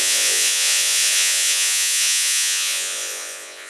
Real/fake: fake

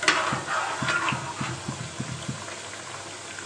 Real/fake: real